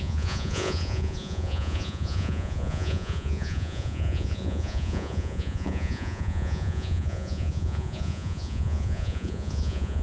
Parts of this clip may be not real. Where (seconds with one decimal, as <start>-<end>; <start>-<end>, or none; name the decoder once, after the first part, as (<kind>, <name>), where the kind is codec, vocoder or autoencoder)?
0.0-10.0 (vocoder, Vocos)